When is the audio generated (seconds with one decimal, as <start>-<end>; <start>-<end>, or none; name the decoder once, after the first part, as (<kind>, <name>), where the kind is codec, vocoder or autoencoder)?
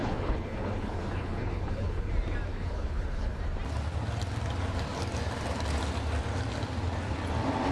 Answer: 0.0-2.1 (codec, HILCodec); 2.5-3.4